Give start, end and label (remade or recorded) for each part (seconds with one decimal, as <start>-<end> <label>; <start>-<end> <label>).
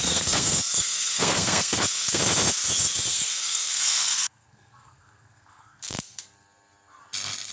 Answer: 0.0-2.2 remade; 2.2-3.1 recorded; 3.1-6.2 remade; 6.2-7.5 recorded